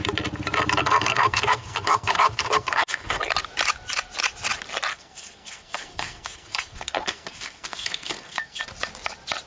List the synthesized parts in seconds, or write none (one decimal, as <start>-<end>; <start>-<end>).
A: 0.8-3.2; 4.9-8.6